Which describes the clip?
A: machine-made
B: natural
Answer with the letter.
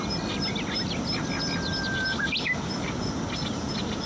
B